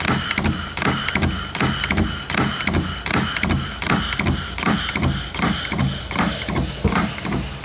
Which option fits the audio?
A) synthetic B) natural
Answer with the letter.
B